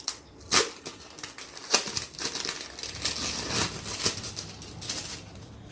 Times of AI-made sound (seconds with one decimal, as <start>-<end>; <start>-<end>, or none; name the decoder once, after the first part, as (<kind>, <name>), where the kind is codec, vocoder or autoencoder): none